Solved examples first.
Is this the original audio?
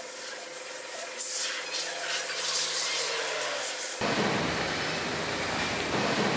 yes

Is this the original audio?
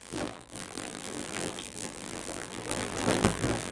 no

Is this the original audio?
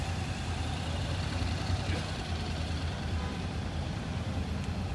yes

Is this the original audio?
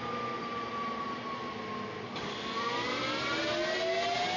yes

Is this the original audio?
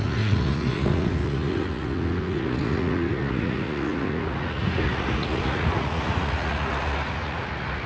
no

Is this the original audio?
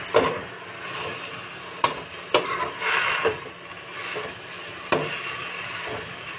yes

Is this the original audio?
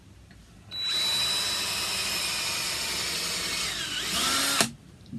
yes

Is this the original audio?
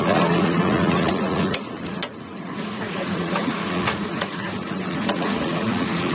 no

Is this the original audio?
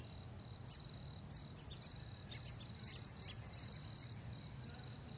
yes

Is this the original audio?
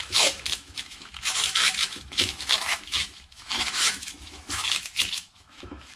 no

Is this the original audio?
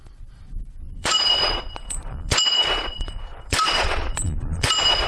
no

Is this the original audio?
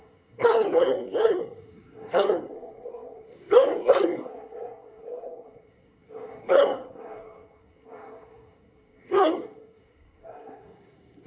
no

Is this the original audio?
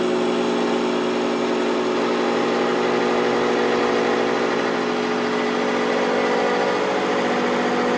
yes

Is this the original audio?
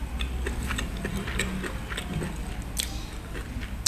yes